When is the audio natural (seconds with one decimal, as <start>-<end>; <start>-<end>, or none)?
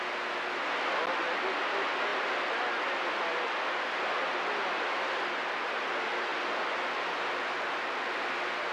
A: 0.0-8.7